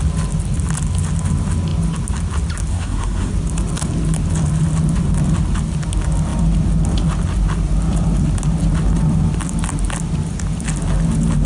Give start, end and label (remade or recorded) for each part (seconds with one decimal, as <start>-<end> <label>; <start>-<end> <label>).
0.0-2.7 recorded; 2.7-3.3 remade; 3.3-11.5 recorded